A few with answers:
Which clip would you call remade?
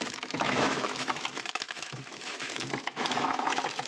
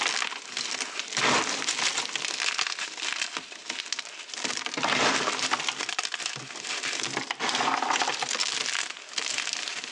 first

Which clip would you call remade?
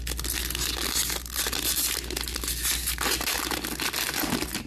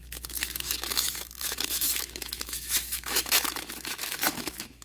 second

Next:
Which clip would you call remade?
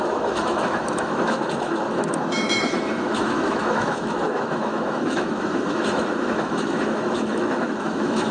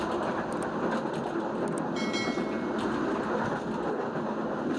first